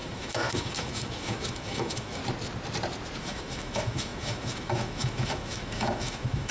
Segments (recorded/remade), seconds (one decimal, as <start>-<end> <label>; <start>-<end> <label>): 0.0-2.2 remade; 2.2-3.2 recorded; 3.2-6.5 remade

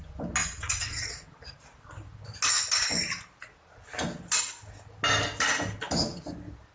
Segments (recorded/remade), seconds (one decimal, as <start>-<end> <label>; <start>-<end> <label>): 0.0-0.4 recorded; 0.4-1.4 remade; 1.4-6.7 recorded